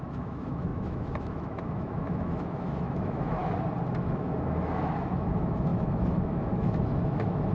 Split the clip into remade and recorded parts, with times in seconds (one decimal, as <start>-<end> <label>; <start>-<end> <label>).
0.0-3.4 remade; 3.4-4.0 recorded; 4.0-7.5 remade